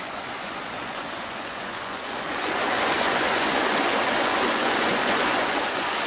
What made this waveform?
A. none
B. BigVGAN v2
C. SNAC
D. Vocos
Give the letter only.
D